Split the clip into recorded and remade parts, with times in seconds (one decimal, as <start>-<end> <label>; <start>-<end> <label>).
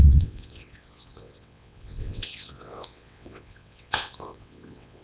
0.0-5.0 remade